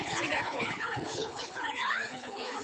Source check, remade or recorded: remade